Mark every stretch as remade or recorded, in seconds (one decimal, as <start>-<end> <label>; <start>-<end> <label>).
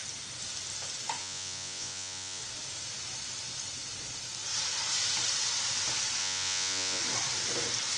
0.0-1.2 recorded; 1.2-2.4 remade; 2.4-6.2 recorded; 6.2-7.0 remade; 7.0-8.0 recorded